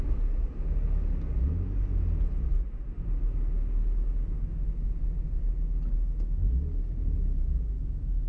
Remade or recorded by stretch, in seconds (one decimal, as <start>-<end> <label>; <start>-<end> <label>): 0.0-8.3 recorded